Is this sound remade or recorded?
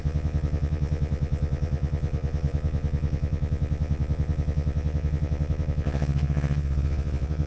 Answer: remade